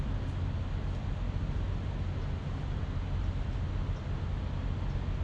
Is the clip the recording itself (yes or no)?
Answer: yes